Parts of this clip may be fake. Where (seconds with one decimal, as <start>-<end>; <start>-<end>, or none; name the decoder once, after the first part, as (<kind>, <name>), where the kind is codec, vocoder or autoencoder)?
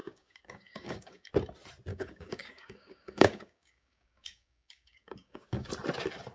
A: 0.0-1.3 (codec, DAC); 1.9-5.7